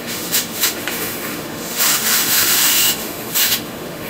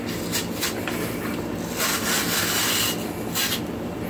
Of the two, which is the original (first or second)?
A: second